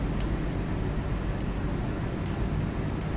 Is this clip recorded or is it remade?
recorded